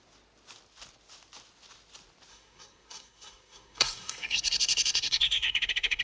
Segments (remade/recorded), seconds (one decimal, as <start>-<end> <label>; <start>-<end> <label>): 0.0-2.3 recorded; 2.3-6.0 remade